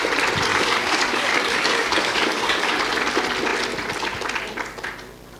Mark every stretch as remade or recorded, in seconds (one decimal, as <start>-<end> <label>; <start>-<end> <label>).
0.0-0.5 recorded; 0.5-2.8 remade; 2.8-5.4 recorded